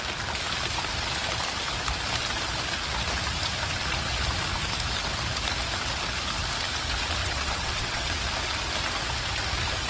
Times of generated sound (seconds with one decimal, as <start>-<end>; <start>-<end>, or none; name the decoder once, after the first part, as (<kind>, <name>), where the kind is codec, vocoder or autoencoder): 7.2-8.2 (vocoder, WaveNeXt)